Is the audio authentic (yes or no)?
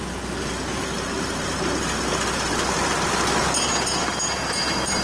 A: yes